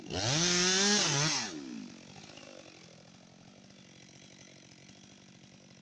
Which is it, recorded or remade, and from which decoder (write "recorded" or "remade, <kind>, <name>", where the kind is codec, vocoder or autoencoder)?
recorded